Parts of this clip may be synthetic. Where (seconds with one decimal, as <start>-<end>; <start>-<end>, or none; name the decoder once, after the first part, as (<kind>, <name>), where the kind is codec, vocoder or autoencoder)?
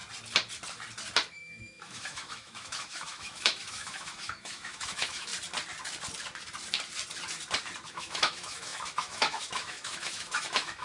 1.3-5.3 (autoencoder, DAC-VAE); 7.9-10.8